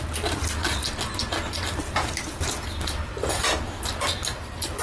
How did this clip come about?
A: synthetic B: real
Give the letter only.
B